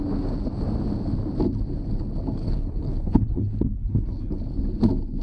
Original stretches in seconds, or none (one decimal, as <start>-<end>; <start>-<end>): 0.0-2.4; 4.4-5.2